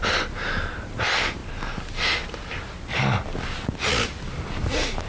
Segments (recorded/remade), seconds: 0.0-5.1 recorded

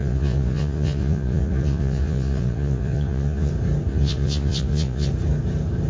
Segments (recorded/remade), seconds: 0.0-3.5 remade; 3.5-3.9 recorded; 3.9-5.1 remade; 5.1-5.9 recorded

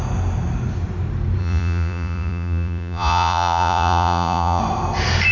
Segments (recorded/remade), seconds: 0.0-1.4 recorded; 1.4-4.6 remade; 4.6-5.3 recorded

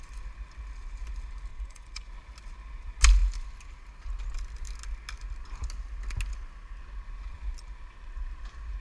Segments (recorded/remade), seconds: 0.0-1.5 recorded; 1.5-2.1 remade; 2.1-8.8 recorded

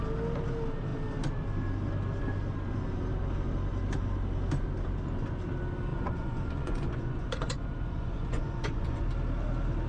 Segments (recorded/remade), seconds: 0.0-5.9 recorded; 5.9-9.1 remade; 9.1-9.9 recorded

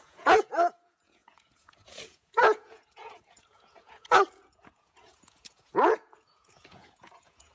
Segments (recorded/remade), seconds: 0.0-7.5 remade